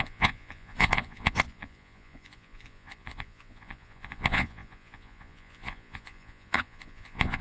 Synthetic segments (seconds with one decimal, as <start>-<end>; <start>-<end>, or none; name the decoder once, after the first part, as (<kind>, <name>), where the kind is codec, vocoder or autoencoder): 0.0-7.4 (vocoder, Vocos)